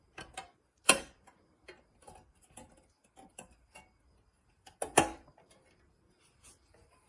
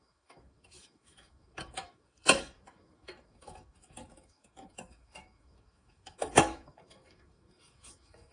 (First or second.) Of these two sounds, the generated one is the second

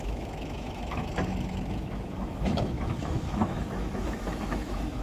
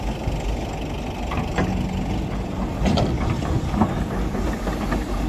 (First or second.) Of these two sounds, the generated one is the first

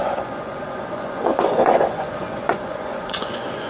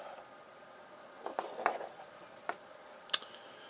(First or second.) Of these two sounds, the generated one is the first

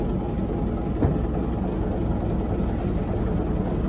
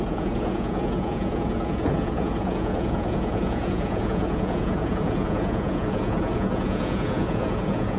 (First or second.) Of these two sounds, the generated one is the second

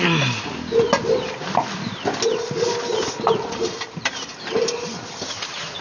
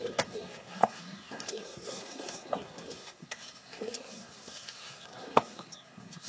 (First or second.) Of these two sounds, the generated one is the second